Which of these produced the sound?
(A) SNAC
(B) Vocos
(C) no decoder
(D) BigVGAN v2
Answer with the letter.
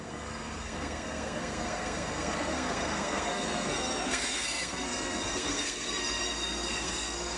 A